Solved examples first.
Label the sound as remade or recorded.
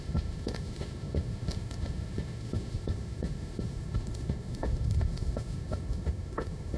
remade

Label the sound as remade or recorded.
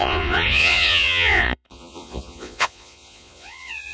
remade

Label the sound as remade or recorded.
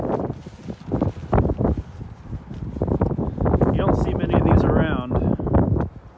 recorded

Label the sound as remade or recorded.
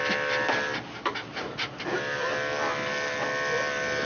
recorded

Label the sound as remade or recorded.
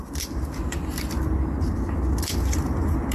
recorded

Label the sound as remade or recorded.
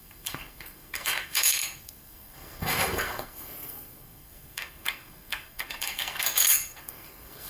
remade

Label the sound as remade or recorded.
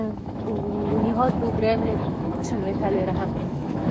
remade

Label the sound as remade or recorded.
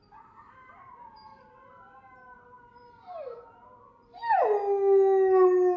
recorded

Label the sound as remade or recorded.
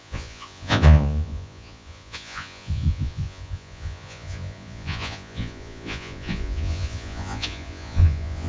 remade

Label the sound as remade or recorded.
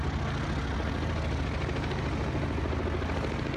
recorded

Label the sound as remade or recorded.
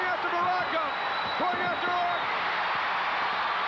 recorded